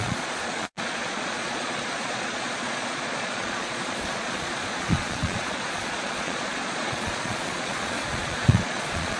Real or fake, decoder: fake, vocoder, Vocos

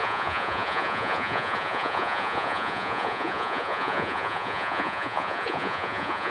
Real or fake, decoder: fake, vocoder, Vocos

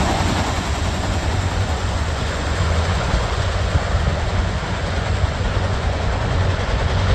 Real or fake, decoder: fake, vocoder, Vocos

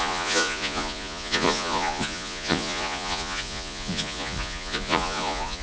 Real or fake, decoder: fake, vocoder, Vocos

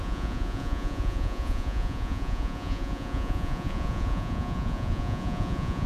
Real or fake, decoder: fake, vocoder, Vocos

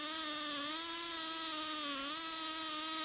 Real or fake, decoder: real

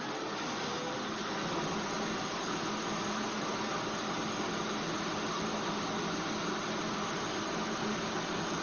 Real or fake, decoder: real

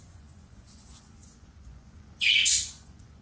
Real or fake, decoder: fake, vocoder, Vocos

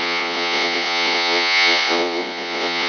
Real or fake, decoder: fake, vocoder, Vocos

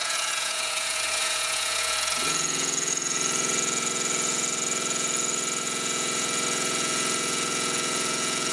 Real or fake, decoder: fake, vocoder, Vocos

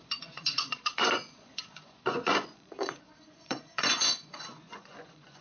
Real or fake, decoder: fake, vocoder, Vocos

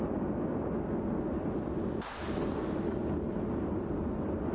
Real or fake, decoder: real